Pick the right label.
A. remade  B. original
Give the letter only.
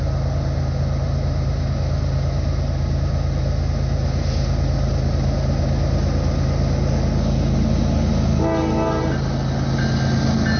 B